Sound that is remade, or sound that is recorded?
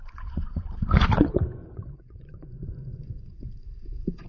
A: remade